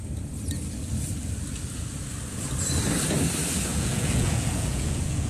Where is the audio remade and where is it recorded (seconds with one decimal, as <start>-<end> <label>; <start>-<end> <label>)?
0.0-3.7 recorded; 3.7-5.3 remade